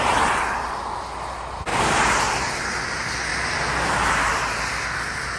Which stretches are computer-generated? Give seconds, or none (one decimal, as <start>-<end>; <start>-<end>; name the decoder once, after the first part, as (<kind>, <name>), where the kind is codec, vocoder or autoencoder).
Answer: none